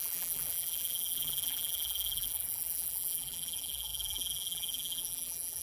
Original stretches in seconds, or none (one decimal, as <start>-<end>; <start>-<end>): none